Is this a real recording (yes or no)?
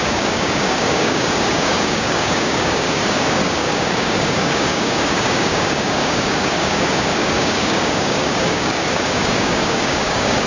no